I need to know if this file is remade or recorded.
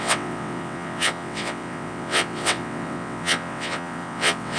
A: remade